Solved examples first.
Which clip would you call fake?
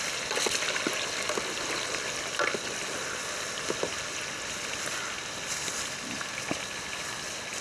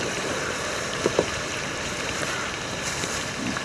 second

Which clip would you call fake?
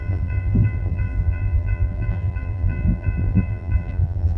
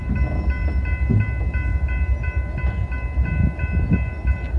first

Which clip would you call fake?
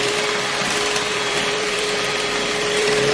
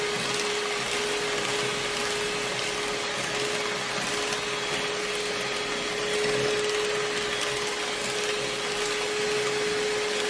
first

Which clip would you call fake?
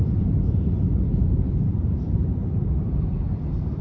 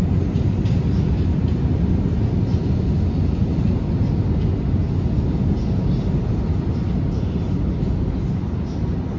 first